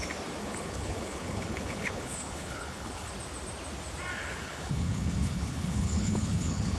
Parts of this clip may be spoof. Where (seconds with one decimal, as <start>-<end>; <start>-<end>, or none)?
0.4-3.1; 4.2-6.8

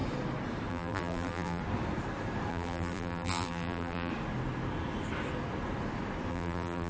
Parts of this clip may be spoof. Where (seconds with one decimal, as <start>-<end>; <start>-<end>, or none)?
0.7-1.6; 2.5-4.1; 6.3-6.9

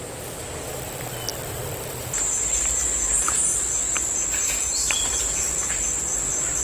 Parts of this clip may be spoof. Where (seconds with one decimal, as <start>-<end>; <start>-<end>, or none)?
0.0-6.6

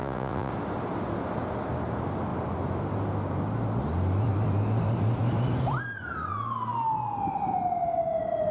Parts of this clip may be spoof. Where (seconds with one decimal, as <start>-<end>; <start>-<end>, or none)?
0.0-0.5

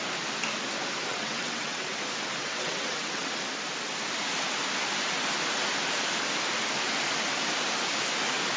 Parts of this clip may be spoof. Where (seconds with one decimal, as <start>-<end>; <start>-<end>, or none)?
1.1-1.9; 2.4-3.3

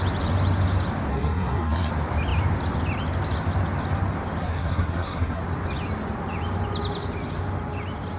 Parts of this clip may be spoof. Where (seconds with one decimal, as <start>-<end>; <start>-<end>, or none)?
1.1-1.9; 4.4-5.4

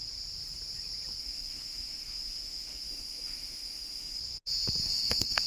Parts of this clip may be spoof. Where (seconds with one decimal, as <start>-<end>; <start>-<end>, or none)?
1.2-4.2; 4.8-5.5